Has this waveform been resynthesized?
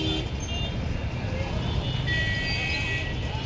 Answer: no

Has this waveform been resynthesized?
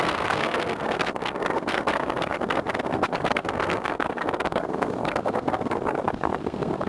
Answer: yes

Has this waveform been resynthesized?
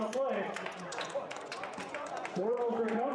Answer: yes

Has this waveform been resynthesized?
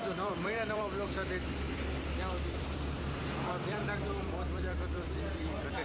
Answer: yes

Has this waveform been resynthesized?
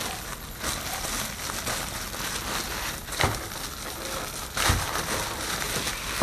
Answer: no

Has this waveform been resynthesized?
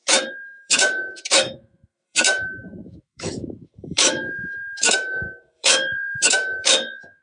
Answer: yes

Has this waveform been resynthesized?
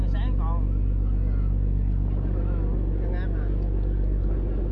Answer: no